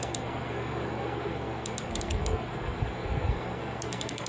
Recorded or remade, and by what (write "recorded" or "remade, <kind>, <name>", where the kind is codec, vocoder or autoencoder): remade, codec, SNAC